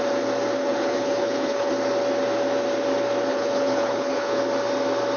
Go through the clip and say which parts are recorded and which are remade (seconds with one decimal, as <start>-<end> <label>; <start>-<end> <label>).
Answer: 0.0-0.6 recorded; 0.6-1.7 remade; 1.7-3.3 recorded; 3.3-4.4 remade; 4.4-5.2 recorded